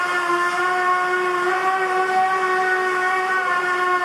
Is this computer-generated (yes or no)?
no